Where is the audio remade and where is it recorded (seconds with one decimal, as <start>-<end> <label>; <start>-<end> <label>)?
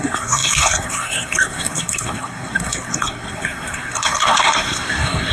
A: 0.0-5.3 remade